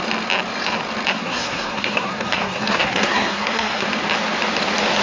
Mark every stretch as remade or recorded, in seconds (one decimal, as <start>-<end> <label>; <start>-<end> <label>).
0.0-1.1 recorded; 1.1-3.9 remade; 3.9-5.0 recorded